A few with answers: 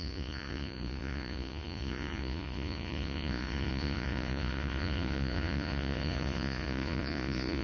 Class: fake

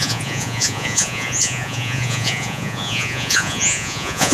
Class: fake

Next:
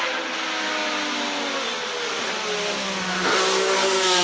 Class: real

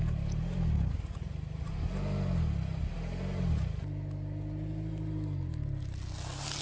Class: real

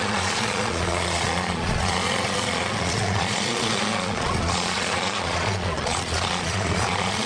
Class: fake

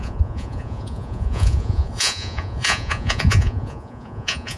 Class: fake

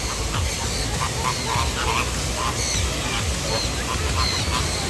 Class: real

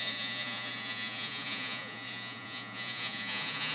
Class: fake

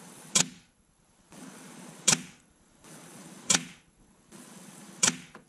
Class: fake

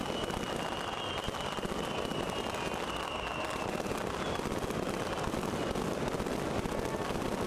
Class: real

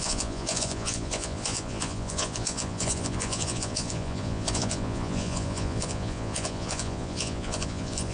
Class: fake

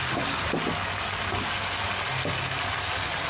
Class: real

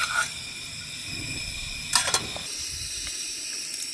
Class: real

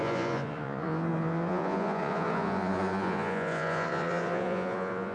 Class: fake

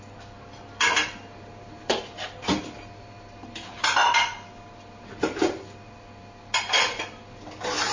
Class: real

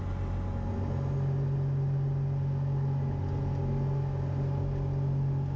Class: real